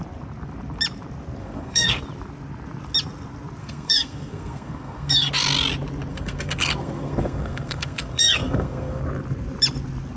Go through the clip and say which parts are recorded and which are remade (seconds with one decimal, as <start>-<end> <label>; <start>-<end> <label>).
0.0-1.4 recorded; 1.4-2.0 remade; 2.0-3.6 recorded; 3.6-5.3 remade; 5.3-6.1 recorded; 6.1-9.0 remade; 9.0-10.2 recorded